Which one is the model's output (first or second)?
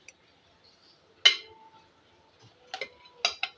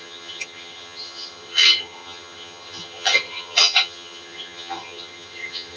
second